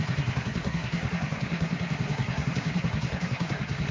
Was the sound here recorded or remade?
remade